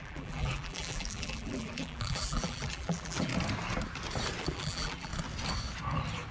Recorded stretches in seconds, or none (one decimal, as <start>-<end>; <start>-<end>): 3.3-4.4; 5.1-6.3

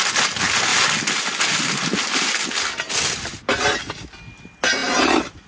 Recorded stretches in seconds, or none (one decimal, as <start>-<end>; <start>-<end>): 0.0-5.5

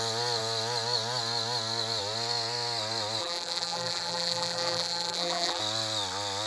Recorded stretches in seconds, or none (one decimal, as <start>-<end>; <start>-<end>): 0.0-3.2; 5.6-6.5